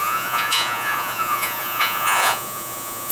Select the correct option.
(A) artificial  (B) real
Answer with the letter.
A